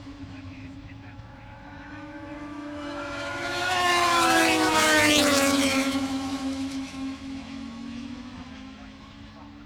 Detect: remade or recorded remade